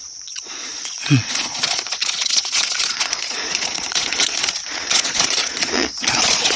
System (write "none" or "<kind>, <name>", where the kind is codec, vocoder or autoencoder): vocoder, Vocos